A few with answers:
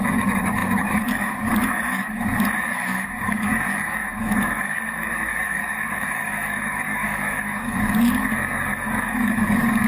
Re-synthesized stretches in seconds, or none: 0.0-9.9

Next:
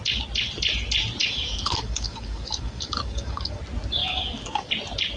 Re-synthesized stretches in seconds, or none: 1.2-3.6; 4.0-4.7

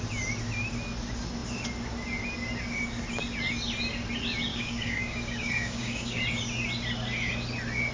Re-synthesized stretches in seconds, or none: 4.5-6.2

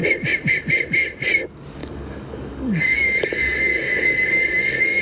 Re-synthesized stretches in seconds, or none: 1.8-5.0

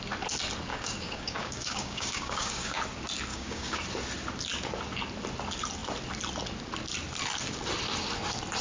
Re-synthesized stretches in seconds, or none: 0.7-2.8; 3.3-3.8

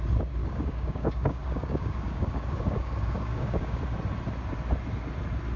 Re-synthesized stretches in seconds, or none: 0.4-3.8